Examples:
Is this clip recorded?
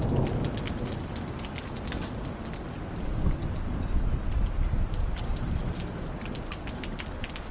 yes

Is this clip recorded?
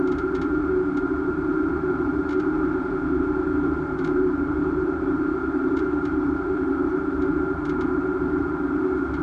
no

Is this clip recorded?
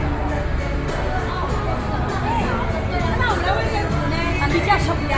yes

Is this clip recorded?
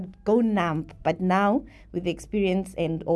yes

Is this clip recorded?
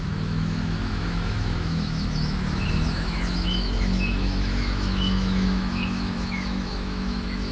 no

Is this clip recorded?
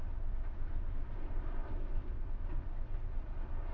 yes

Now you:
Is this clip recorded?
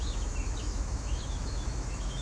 no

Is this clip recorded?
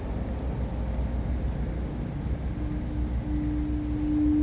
yes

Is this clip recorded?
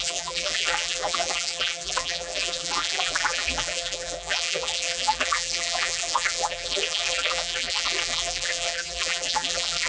no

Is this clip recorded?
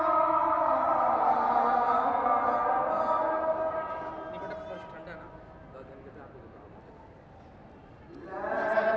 yes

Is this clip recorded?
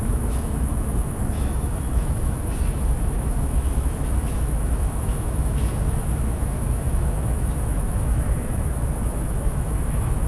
no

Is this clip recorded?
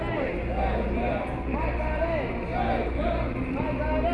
yes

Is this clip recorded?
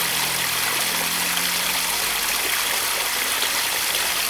yes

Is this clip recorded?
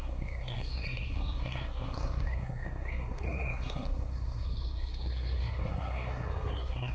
no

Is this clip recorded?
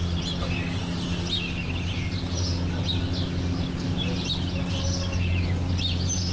yes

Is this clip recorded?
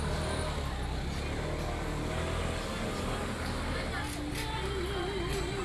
yes